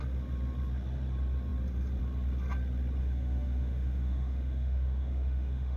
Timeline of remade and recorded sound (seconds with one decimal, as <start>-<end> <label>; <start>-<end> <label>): 0.0-3.0 recorded; 3.0-5.8 remade